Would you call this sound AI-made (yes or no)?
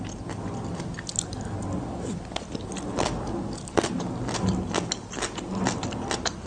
no